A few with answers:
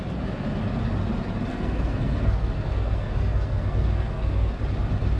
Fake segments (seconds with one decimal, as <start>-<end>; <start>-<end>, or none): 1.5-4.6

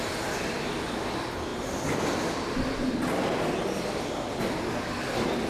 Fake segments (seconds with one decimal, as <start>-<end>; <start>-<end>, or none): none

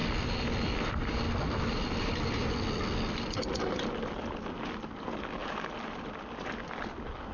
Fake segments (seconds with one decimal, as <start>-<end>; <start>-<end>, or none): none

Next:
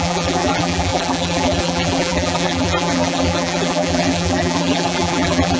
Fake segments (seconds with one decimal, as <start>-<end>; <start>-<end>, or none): 0.0-5.6

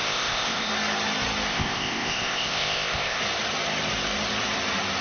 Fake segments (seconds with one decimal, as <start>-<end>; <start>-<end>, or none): 0.0-0.7; 1.5-3.2